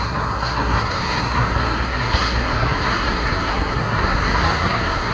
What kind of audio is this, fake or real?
fake